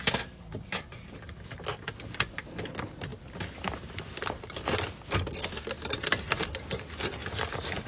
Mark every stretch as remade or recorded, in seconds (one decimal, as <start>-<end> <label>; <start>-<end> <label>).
0.0-7.9 recorded